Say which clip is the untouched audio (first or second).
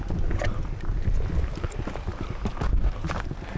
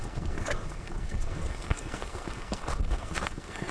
first